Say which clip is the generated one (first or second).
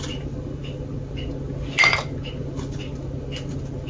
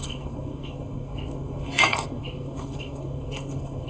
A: second